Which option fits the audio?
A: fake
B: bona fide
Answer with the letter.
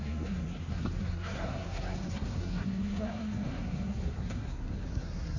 A